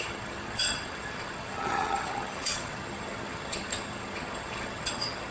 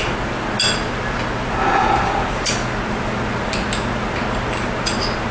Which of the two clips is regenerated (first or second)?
first